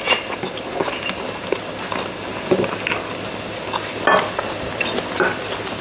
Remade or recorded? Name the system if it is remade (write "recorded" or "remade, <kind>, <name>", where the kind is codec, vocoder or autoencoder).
recorded